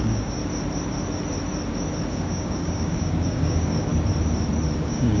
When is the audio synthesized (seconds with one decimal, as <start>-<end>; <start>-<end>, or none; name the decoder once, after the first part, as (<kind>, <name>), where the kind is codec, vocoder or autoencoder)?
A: 0.0-0.4 (codec, DAC); 2.1-3.9; 4.8-5.2